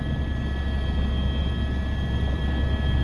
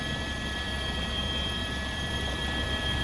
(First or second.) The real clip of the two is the first